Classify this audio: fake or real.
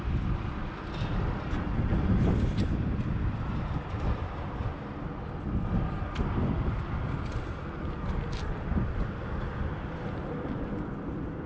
real